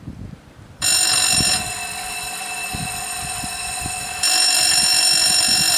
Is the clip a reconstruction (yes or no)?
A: yes